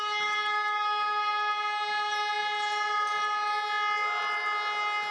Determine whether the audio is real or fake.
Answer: real